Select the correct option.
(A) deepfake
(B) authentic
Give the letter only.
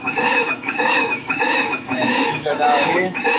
A